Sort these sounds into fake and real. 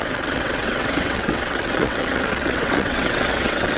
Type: fake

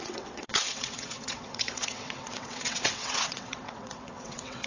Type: fake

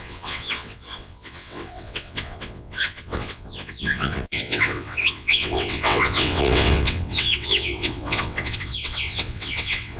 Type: fake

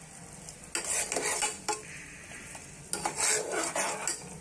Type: real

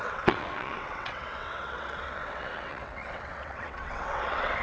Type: fake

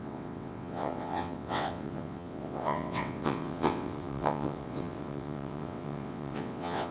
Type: fake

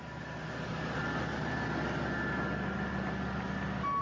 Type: real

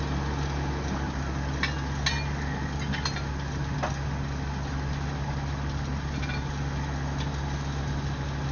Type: real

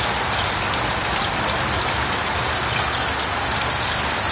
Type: real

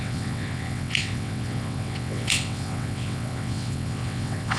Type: fake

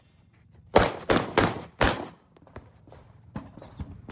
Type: real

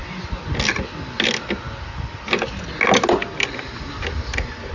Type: real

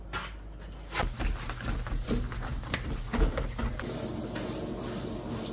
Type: real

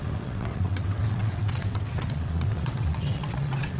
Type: fake